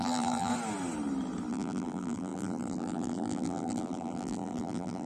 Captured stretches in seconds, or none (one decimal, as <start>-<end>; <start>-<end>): 0.5-1.5